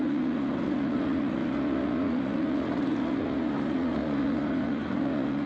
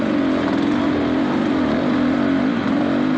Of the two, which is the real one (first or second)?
second